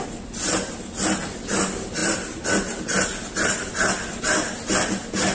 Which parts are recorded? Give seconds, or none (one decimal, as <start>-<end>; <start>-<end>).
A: 0.0-5.3